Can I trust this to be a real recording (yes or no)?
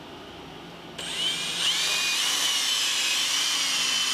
yes